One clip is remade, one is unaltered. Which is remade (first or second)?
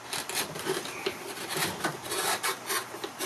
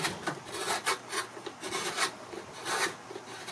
first